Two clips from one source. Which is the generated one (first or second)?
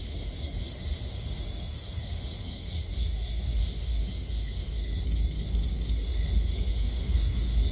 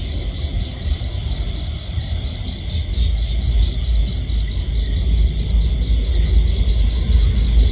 first